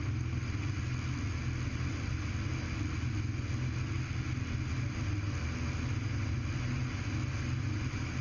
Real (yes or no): yes